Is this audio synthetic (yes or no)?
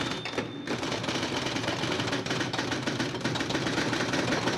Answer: no